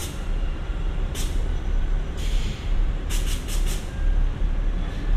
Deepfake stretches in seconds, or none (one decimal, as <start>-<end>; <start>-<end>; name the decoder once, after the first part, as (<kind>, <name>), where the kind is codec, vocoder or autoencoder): 0.0-3.1 (vocoder, BigVGAN v2)